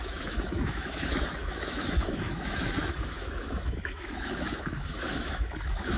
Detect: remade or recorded remade